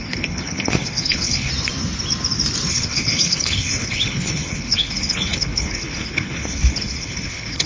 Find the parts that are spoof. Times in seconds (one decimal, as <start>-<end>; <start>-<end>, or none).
0.0-1.5; 2.7-7.7